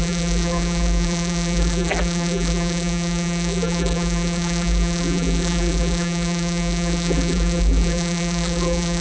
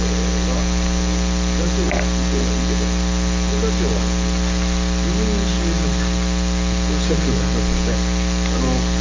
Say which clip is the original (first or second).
second